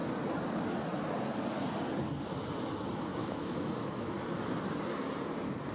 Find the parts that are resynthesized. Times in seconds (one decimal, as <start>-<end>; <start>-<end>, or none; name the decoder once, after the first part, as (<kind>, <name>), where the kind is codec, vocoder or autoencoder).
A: 3.1-4.1 (autoencoder, DAC-VAE)